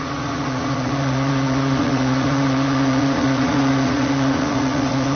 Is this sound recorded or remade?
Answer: remade